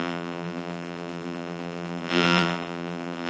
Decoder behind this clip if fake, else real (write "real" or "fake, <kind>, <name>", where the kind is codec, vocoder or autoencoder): fake, vocoder, BigVGAN v2